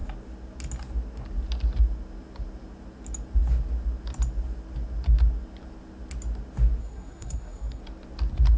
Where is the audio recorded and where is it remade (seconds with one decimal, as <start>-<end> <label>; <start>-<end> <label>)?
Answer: 0.0-6.8 recorded; 6.8-7.8 remade; 7.8-8.6 recorded